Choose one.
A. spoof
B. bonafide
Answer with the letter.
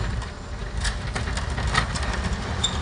A